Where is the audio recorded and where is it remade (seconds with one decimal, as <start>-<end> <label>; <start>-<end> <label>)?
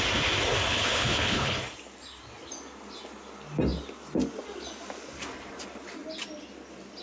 0.0-0.7 recorded; 0.7-1.6 remade; 1.6-7.0 recorded